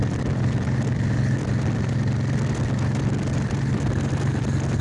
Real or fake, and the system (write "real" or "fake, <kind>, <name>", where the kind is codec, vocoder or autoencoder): real